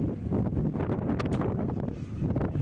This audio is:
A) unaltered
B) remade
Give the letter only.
A